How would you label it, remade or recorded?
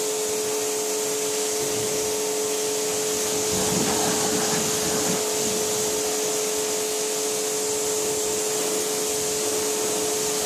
recorded